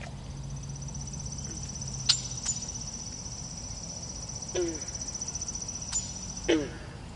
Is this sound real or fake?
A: real